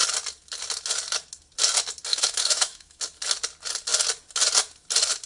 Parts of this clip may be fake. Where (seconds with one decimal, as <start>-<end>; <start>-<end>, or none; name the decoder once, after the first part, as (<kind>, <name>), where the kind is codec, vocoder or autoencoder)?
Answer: 2.1-3.0 (autoencoder, DAC-VAE)